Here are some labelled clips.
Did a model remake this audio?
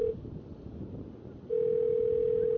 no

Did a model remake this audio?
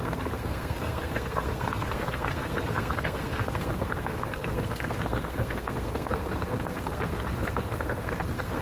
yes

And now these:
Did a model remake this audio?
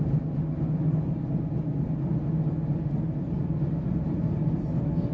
no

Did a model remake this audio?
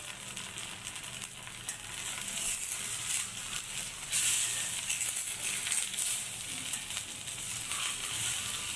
no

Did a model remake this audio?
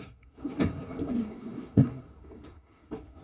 yes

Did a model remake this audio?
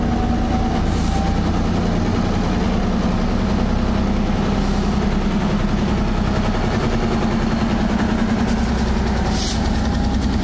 no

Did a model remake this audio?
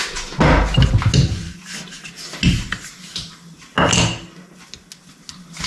no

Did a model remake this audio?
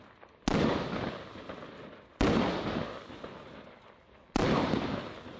no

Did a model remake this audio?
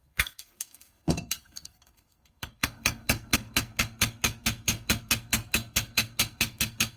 yes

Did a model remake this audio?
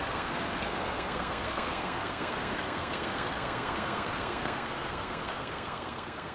yes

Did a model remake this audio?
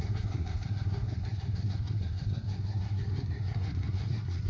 yes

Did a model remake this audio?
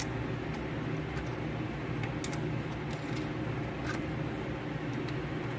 no